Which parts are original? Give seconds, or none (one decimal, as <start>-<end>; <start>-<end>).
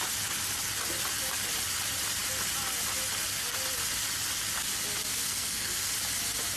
0.0-5.1; 5.9-6.6